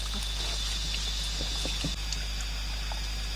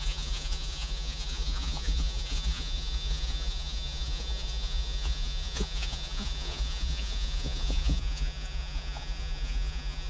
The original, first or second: first